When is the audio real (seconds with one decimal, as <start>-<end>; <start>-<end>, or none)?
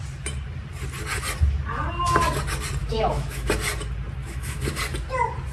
0.0-2.8; 3.5-4.2; 4.8-5.5